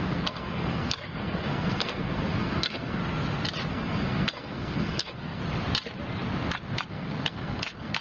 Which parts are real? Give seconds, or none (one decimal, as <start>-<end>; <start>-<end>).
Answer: 3.0-3.7; 5.4-6.9